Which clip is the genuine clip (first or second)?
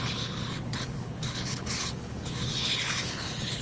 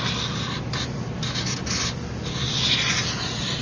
second